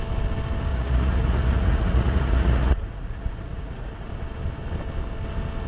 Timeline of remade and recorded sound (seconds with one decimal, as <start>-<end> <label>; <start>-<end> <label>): 0.0-0.7 recorded; 0.7-4.1 remade; 4.1-5.7 recorded